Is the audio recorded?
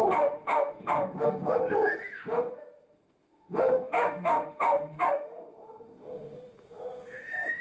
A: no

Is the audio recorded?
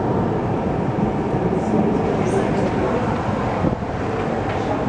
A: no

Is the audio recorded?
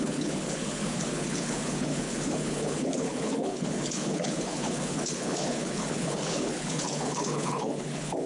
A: no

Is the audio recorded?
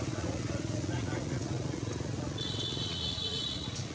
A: no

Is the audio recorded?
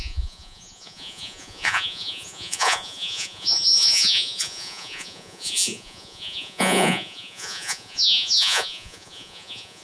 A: no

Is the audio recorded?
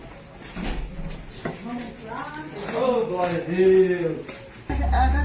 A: yes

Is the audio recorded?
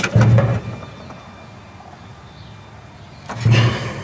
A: yes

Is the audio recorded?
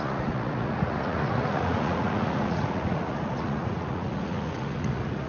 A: no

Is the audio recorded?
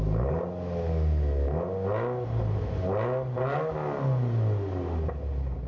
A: yes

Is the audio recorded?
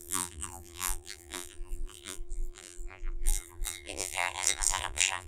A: no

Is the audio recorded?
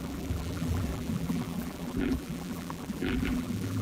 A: no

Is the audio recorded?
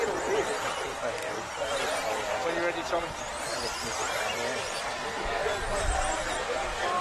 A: yes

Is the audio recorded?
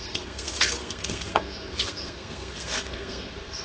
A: no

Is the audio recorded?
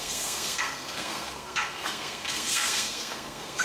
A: no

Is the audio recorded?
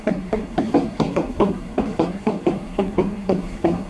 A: no